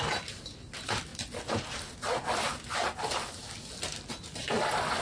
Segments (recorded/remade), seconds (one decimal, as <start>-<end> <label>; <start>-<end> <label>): 0.0-5.0 recorded